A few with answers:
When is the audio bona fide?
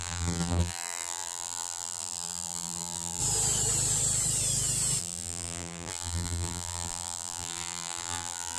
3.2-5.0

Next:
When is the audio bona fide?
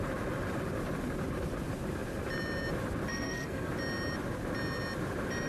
0.0-3.1; 3.7-5.5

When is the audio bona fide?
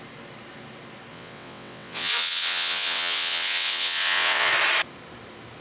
0.0-1.1; 4.5-5.6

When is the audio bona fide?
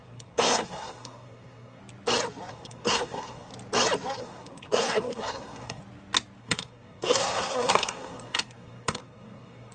1.8-2.5; 3.5-4.2; 5.8-6.4